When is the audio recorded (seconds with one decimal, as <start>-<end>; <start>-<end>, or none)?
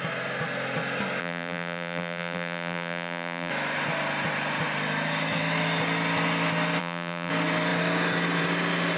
0.0-1.2; 3.5-6.8; 7.3-9.0